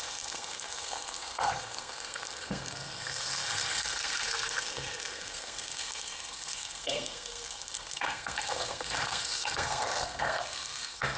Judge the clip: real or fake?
fake